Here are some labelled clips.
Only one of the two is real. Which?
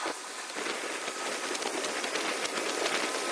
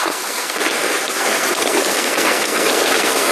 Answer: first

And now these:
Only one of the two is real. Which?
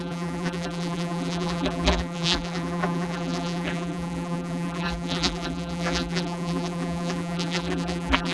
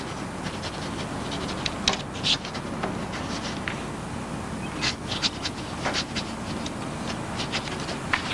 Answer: second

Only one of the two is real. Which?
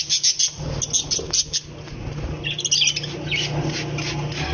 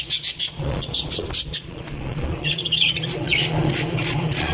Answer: first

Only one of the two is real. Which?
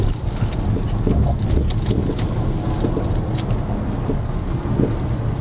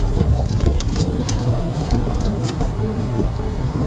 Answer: first